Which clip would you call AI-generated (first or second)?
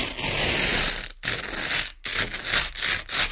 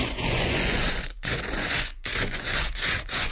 second